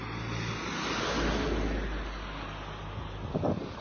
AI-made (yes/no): no